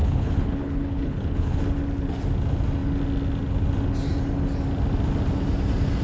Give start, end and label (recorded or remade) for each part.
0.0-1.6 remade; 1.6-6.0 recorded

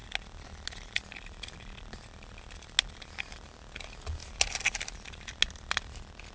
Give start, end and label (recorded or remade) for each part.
0.0-6.3 recorded

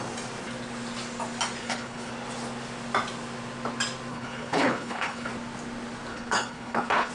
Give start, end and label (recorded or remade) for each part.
0.0-1.6 recorded; 1.6-2.1 remade; 2.1-4.1 recorded; 4.1-5.3 remade; 5.3-6.1 recorded; 6.1-7.1 remade

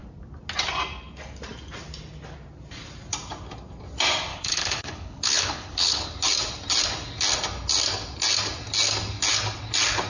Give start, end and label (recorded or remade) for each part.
0.0-4.3 recorded; 4.3-6.1 remade; 6.1-10.1 recorded